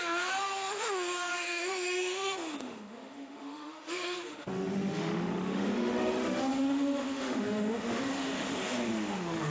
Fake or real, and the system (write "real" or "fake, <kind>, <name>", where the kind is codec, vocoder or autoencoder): fake, autoencoder, DAC-VAE